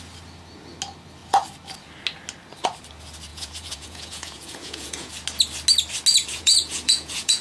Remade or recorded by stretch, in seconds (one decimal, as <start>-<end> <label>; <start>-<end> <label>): 0.0-3.3 recorded; 3.3-5.1 remade; 5.1-6.3 recorded; 6.3-7.4 remade